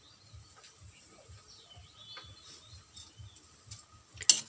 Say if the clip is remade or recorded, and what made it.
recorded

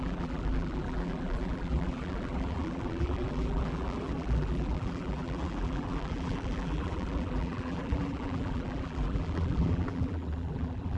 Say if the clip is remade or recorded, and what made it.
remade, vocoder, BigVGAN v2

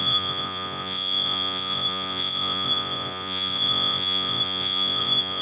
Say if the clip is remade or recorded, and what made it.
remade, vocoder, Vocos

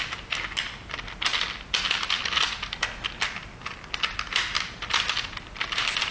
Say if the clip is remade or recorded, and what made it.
recorded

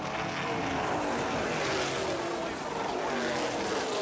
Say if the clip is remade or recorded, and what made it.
recorded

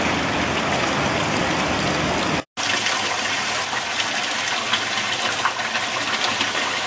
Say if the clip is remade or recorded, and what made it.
recorded